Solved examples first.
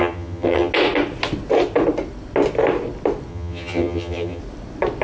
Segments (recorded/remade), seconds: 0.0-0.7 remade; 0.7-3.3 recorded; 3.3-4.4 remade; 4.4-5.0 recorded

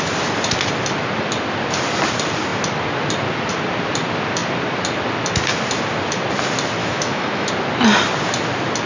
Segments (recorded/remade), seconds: 0.0-6.8 recorded; 6.8-7.5 remade; 7.5-8.9 recorded

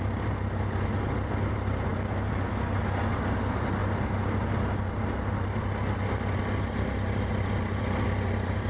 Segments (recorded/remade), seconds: 0.0-8.7 recorded

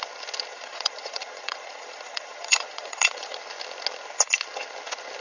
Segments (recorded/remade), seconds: 0.0-0.5 recorded; 0.5-3.4 remade; 3.4-5.2 recorded

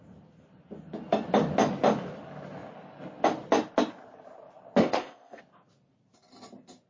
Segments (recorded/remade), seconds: 0.0-4.8 recorded; 4.8-5.4 remade; 5.4-6.9 recorded

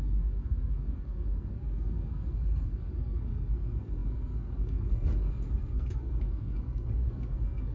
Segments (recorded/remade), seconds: 0.0-7.7 remade